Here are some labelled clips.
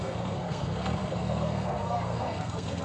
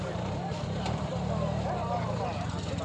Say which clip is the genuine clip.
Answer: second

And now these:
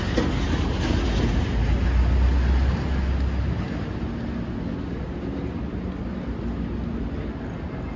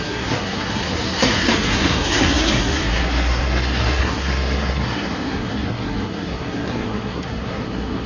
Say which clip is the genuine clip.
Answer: first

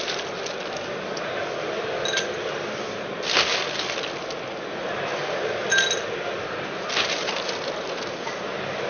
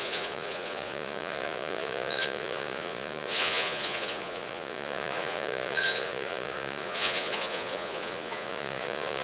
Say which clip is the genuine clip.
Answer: first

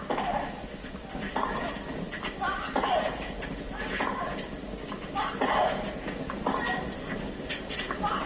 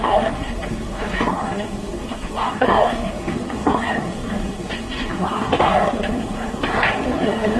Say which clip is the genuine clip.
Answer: first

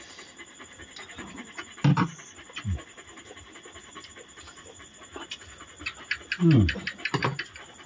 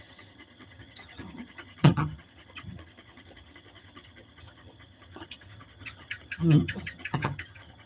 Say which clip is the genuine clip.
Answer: first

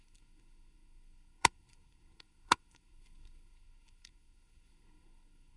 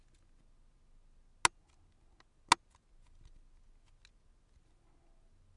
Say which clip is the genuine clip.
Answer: second